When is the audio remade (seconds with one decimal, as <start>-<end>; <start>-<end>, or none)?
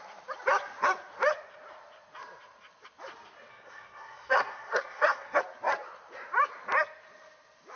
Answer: 3.5-5.4